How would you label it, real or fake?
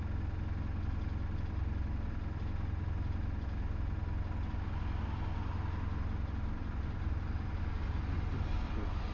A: real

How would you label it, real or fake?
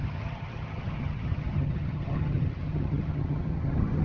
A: fake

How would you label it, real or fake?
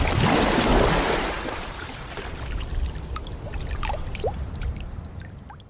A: real